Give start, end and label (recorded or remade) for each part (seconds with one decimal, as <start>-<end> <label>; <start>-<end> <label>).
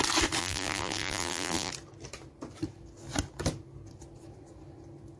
0.0-0.4 recorded; 0.4-1.7 remade; 1.7-5.2 recorded